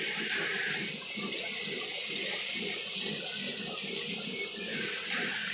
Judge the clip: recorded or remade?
recorded